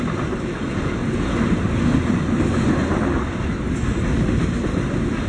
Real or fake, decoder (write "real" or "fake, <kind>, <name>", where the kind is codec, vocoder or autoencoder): real